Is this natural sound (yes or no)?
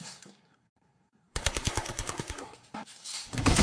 no